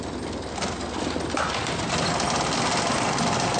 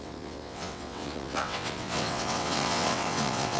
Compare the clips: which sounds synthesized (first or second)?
second